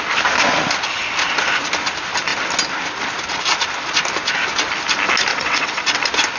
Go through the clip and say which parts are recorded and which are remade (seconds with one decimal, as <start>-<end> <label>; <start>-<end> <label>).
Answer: 0.0-5.3 recorded; 5.3-6.0 remade; 6.0-6.4 recorded